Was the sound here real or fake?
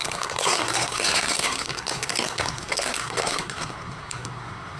fake